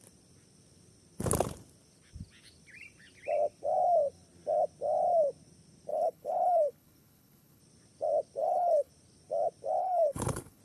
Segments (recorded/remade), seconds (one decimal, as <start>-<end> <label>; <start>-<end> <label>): 0.0-5.9 recorded; 5.9-7.6 remade; 7.6-8.4 recorded; 8.4-8.9 remade; 8.9-9.8 recorded; 9.8-10.6 remade